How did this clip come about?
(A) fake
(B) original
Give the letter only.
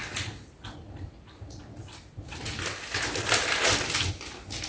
B